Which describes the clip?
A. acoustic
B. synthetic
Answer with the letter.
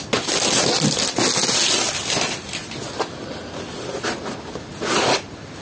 A